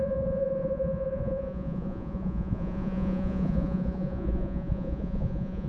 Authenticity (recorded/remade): remade